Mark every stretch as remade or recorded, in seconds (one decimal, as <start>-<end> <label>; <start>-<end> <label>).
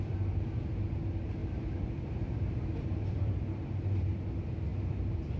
0.0-1.4 recorded; 1.4-3.5 remade; 3.5-4.7 recorded; 4.7-5.4 remade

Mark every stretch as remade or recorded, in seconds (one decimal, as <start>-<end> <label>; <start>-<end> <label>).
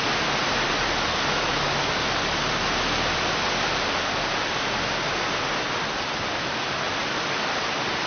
0.0-7.0 recorded; 7.0-8.1 remade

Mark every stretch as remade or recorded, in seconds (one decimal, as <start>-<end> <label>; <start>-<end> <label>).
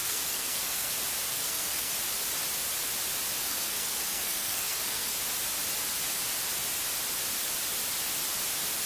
0.0-0.9 remade; 0.9-1.3 recorded; 1.3-1.9 remade; 1.9-3.5 recorded; 3.5-5.2 remade; 5.2-8.9 recorded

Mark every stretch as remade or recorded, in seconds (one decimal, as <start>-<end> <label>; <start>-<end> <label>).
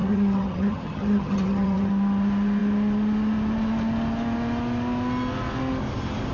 0.0-1.9 remade; 1.9-6.3 recorded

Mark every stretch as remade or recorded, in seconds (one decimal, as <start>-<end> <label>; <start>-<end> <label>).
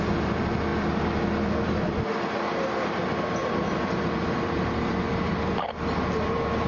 0.0-3.4 recorded; 3.4-5.5 remade; 5.5-6.7 recorded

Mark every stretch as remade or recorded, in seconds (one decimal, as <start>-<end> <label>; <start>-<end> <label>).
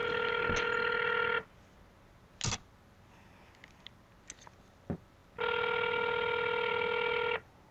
0.0-7.7 recorded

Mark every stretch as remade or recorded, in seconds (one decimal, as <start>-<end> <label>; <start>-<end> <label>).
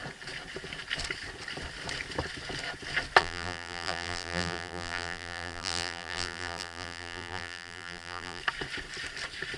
0.0-3.2 recorded; 3.2-8.4 remade; 8.4-9.6 recorded